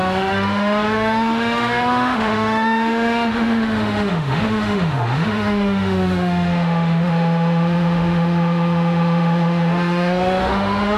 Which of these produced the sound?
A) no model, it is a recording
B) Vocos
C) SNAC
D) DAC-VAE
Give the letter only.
D